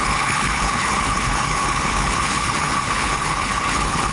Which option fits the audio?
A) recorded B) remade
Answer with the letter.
B